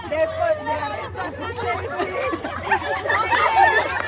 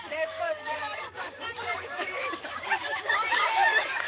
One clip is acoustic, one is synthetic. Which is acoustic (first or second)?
first